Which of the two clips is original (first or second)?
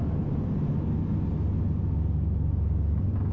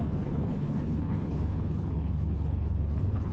first